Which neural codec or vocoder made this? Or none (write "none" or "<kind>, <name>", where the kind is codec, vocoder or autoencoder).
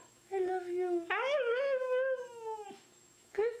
autoencoder, DAC-VAE